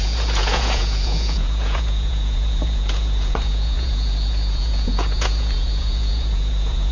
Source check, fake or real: fake